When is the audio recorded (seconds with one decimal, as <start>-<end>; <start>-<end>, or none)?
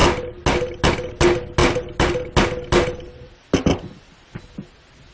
0.0-5.1